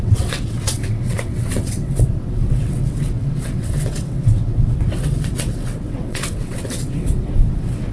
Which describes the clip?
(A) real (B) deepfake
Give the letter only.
B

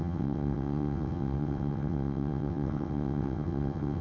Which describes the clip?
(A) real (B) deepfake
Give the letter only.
B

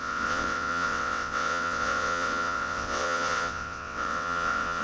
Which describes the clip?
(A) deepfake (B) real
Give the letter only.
A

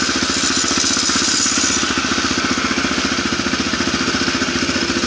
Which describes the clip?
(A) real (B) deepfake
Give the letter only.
A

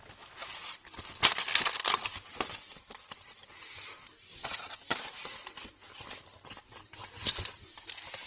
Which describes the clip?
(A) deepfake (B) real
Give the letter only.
B